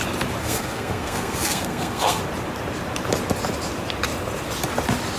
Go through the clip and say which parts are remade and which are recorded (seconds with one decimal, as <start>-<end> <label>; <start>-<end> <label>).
0.0-0.4 recorded; 0.4-2.2 remade; 2.2-5.2 recorded